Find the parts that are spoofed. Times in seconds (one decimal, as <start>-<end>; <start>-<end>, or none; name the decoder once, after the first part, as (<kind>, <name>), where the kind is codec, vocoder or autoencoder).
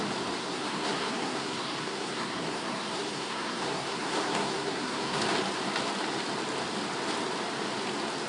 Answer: 0.4-5.2 (codec, SNAC)